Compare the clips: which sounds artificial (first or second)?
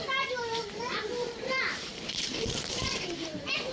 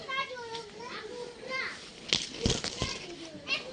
first